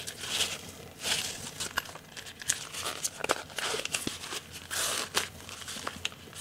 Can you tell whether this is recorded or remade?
recorded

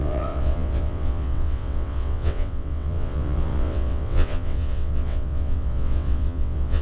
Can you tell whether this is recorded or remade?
remade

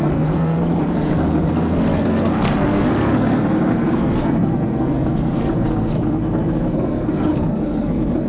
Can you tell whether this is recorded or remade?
remade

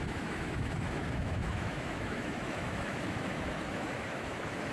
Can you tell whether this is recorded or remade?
remade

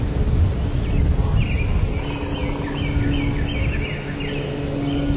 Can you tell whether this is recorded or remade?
recorded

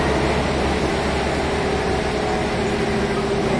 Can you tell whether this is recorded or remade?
recorded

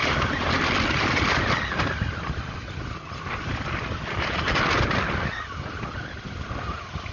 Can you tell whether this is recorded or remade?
recorded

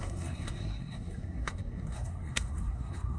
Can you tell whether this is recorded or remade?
remade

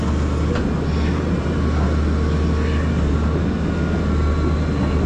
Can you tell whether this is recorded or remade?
recorded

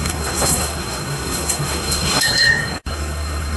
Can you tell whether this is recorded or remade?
remade